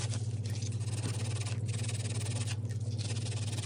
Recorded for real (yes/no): yes